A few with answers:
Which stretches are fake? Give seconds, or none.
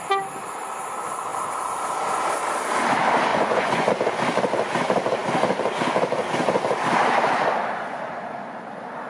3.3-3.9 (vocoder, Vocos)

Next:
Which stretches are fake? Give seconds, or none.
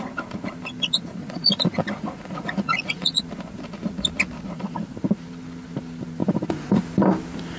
1.2-3.2 (vocoder, Vocos); 6.2-6.8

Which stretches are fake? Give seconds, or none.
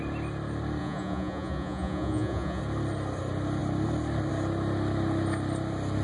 0.8-2.6 (vocoder, Vocos)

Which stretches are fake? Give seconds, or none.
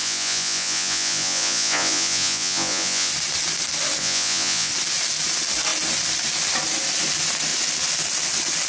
0.0-3.1 (vocoder, Vocos); 4.0-4.7